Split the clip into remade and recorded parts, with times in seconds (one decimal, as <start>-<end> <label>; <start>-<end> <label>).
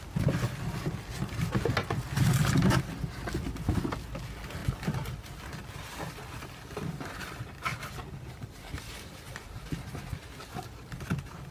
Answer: 0.0-4.6 recorded; 4.6-9.7 remade; 9.7-11.5 recorded